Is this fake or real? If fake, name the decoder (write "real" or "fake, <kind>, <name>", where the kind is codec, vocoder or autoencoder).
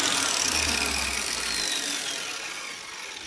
real